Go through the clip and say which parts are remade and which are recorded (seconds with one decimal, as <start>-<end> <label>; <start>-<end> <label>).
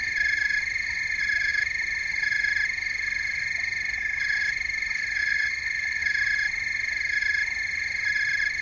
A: 0.0-5.2 recorded; 5.2-6.0 remade; 6.0-8.6 recorded